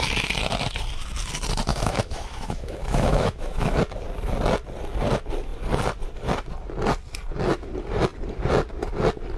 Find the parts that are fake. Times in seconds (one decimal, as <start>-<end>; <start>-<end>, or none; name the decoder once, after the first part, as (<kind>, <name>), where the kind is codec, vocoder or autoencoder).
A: 1.7-3.8 (autoencoder, DAC-VAE)

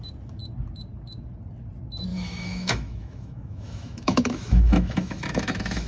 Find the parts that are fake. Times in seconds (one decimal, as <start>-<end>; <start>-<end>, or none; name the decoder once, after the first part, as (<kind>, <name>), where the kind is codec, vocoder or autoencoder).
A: 2.1-5.9 (autoencoder, DAC-VAE)

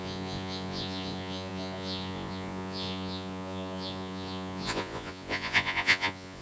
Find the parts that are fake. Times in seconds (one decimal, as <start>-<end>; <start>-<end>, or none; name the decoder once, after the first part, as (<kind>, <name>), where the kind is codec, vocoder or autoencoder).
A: 0.0-6.4 (vocoder, Vocos)

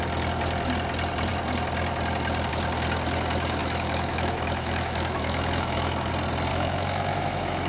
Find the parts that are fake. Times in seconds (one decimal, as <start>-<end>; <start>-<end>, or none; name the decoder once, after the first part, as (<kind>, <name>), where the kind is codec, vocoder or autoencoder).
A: 3.6-6.1 (autoencoder, DAC-VAE); 6.5-7.7

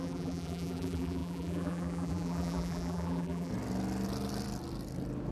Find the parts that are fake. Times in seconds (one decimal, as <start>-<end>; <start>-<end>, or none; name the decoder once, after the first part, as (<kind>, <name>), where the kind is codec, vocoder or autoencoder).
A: 0.0-3.5 (vocoder, BigVGAN v2)

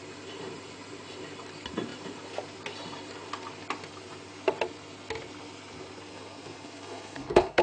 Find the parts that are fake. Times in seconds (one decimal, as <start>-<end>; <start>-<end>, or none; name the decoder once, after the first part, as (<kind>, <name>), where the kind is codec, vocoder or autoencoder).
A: 6.1-7.6 (codec, SNAC)

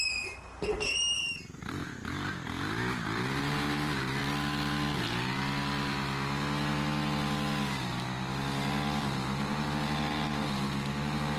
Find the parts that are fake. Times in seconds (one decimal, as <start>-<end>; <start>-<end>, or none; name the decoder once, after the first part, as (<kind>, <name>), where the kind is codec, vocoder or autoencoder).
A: 0.0-4.2 (vocoder, BigVGAN v2); 9.0-11.4

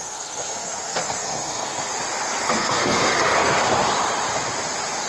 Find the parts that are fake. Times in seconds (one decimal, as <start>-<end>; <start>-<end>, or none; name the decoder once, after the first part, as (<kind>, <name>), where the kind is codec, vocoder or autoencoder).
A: 0.0-1.9 (codec, SNAC); 2.5-3.7